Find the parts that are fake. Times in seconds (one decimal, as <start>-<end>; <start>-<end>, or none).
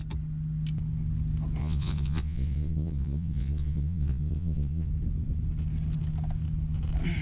1.6-4.9